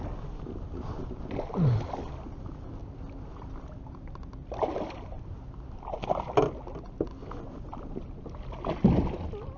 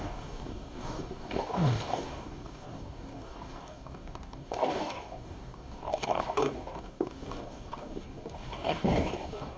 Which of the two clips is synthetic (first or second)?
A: second